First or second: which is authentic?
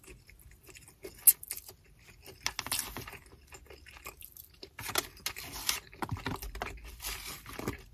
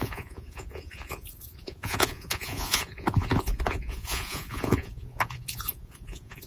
first